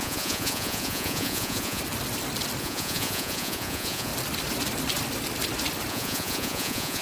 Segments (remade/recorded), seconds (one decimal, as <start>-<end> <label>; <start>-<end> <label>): 0.0-1.8 remade; 1.8-2.6 recorded; 2.6-4.1 remade; 4.1-5.9 recorded; 5.9-7.0 remade